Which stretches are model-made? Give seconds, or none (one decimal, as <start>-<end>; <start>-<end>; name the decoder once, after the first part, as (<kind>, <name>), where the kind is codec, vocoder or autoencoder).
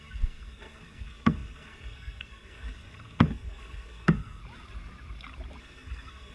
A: 0.0-4.4 (codec, SNAC); 5.6-6.3